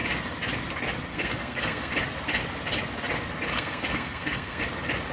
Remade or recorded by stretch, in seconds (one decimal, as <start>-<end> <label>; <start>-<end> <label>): 0.0-1.1 recorded; 1.1-1.9 remade; 1.9-3.5 recorded; 3.5-4.6 remade; 4.6-5.1 recorded